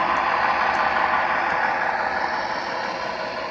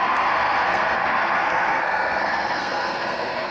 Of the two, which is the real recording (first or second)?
first